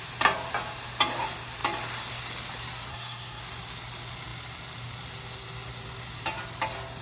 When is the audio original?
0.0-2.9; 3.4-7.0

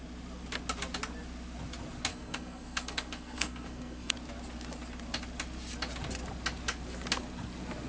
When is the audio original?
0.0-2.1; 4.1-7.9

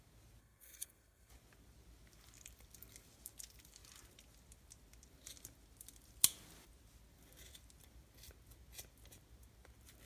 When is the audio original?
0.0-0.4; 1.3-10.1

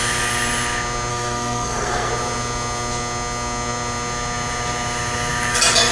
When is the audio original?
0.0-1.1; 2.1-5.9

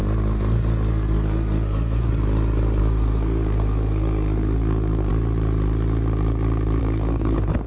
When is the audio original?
0.0-0.9; 2.1-2.8; 5.1-6.8

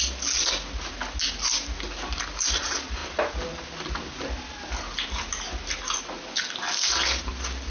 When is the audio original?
0.0-7.7

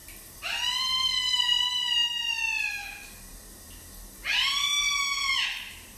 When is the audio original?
0.0-6.0

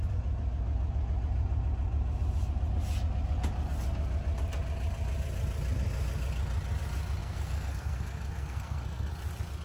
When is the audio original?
0.0-7.2; 9.1-9.6